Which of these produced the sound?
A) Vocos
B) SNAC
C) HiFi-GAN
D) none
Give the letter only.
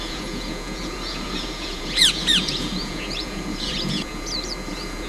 A